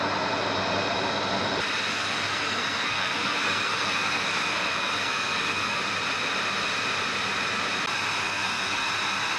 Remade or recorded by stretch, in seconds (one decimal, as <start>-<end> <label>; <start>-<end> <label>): 0.0-1.9 recorded; 1.9-5.8 remade; 5.8-8.2 recorded; 8.2-8.9 remade; 8.9-9.4 recorded